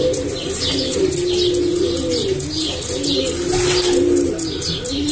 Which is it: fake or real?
real